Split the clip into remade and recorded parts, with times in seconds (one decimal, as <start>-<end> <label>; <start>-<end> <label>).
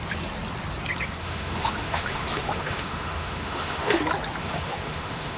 0.0-1.2 recorded; 1.2-4.0 remade; 4.0-4.4 recorded; 4.4-5.4 remade